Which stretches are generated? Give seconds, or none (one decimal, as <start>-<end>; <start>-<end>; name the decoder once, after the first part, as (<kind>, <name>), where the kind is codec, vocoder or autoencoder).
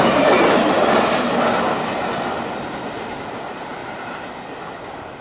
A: none